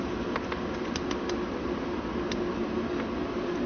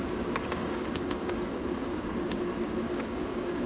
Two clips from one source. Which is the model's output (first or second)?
second